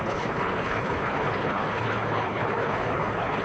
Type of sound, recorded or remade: remade